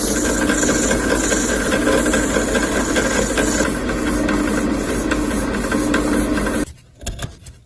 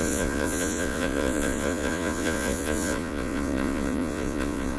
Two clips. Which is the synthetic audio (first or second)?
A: second